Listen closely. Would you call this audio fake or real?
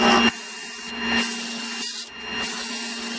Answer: real